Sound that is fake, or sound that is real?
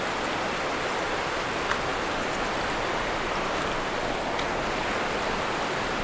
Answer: real